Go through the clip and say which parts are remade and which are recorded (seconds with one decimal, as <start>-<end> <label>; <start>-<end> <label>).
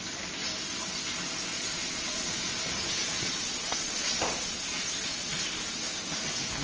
0.0-1.5 recorded; 1.5-5.4 remade; 5.4-6.6 recorded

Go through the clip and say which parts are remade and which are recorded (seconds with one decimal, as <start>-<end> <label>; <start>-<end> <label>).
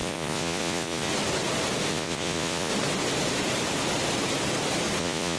0.0-1.1 remade; 1.1-1.9 recorded; 1.9-2.7 remade; 2.7-5.0 recorded; 5.0-5.4 remade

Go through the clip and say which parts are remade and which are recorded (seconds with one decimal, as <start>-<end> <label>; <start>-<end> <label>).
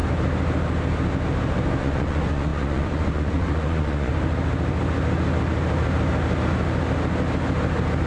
0.0-1.8 recorded; 1.8-4.1 remade; 4.1-8.1 recorded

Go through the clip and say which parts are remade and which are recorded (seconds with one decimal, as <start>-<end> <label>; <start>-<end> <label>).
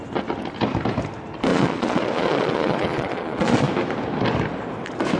0.0-1.5 recorded; 1.5-3.7 remade; 3.7-5.2 recorded